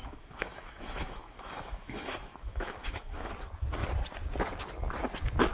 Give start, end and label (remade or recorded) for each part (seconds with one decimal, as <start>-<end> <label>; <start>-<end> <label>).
0.0-3.3 remade; 3.3-5.5 recorded